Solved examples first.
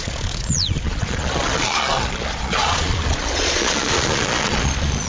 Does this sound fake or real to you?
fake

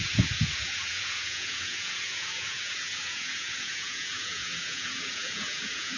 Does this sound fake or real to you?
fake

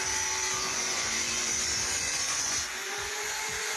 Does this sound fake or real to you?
fake